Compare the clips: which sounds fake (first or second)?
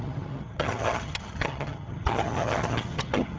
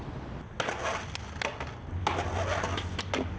first